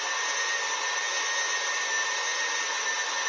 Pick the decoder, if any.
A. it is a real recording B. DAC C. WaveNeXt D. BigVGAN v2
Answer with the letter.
A